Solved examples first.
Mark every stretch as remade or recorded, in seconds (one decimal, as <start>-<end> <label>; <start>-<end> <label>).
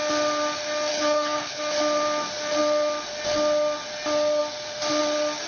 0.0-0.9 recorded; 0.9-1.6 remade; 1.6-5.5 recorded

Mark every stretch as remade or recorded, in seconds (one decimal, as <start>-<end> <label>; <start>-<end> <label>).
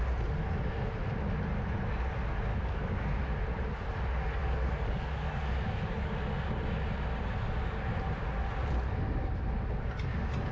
0.0-2.5 recorded; 2.5-3.2 remade; 3.2-4.4 recorded; 4.4-6.1 remade; 6.1-10.5 recorded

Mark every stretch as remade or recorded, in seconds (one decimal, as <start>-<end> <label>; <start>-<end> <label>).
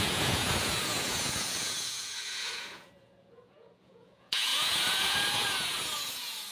0.0-6.5 remade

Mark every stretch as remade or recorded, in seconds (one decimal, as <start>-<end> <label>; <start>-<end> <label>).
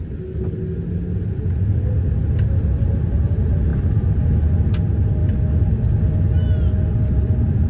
0.0-7.7 recorded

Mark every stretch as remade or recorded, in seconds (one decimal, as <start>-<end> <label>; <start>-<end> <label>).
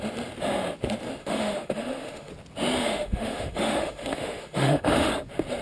0.0-1.2 recorded; 1.2-2.3 remade; 2.3-2.8 recorded; 2.8-5.1 remade; 5.1-5.6 recorded